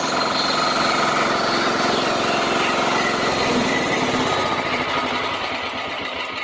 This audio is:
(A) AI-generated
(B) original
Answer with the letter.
A